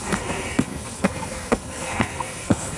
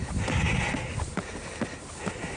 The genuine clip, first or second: second